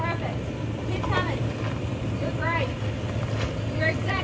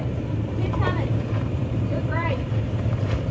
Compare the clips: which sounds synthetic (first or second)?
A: second